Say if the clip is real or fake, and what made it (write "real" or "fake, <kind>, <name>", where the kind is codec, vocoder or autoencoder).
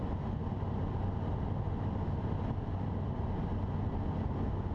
real